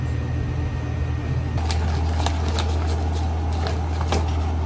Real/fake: real